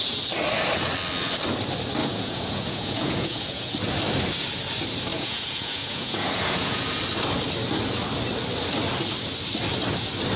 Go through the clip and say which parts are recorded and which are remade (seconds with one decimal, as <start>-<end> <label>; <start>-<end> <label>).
0.0-2.0 recorded; 2.0-3.7 remade; 3.7-5.1 recorded; 5.1-7.0 remade; 7.0-10.4 recorded